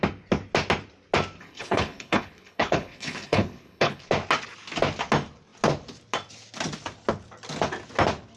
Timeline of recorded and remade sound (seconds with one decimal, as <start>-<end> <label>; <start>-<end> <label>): 0.0-1.4 recorded; 1.4-4.0 remade; 4.0-8.4 recorded